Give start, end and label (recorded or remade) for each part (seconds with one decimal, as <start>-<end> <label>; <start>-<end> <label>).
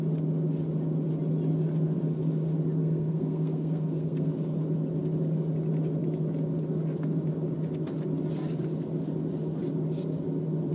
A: 0.0-2.8 recorded; 2.8-4.3 remade; 4.3-10.7 recorded